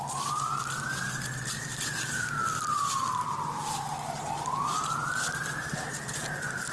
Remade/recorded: recorded